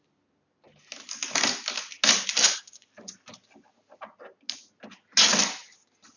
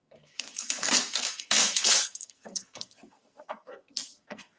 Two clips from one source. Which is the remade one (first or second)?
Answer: second